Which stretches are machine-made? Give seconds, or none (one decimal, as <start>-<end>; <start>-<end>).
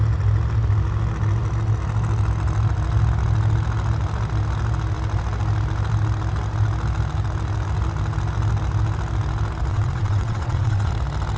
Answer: 9.7-10.9